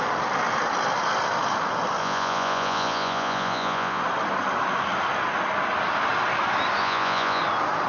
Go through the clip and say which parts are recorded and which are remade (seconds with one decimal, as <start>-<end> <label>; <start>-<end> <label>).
0.0-2.0 recorded; 2.0-4.0 remade; 4.0-6.8 recorded; 6.8-7.4 remade; 7.4-7.9 recorded